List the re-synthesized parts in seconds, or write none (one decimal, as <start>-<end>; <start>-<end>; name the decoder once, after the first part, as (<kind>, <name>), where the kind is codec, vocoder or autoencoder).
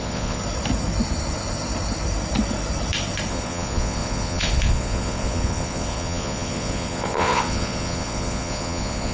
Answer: 0.0-0.4 (vocoder, Vocos); 3.3-9.1